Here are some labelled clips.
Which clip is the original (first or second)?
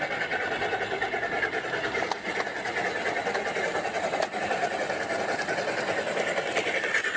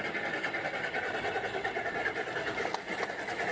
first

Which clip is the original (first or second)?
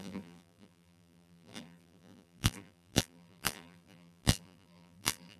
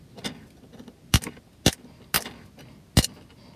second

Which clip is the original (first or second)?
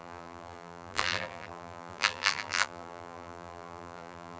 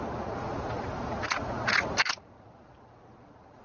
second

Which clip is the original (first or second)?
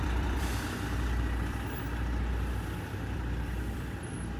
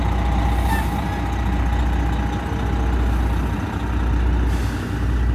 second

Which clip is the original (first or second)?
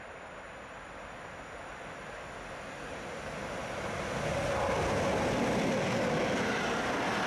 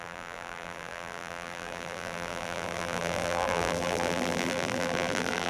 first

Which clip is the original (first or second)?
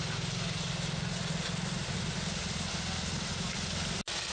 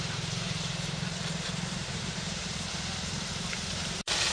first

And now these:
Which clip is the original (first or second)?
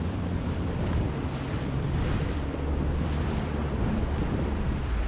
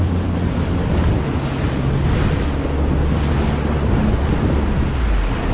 second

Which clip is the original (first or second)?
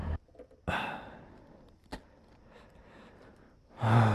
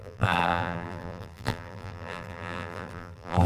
first